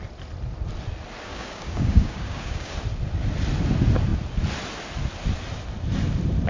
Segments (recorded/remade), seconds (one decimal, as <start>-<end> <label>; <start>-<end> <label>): 0.0-1.3 recorded; 1.3-2.7 remade; 2.7-6.5 recorded